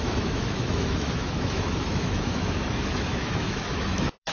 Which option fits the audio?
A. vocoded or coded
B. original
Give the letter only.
A